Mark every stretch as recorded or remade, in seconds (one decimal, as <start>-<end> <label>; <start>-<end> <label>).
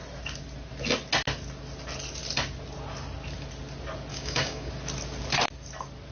0.0-4.1 recorded; 4.1-4.7 remade; 4.7-6.1 recorded